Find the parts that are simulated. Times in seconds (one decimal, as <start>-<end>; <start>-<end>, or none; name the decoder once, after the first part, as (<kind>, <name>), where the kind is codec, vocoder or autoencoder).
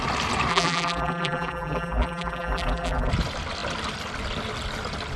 0.5-3.1 (vocoder, BigVGAN v2)